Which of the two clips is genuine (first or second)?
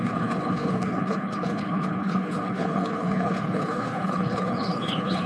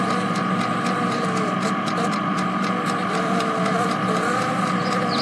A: second